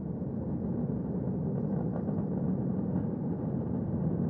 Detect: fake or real real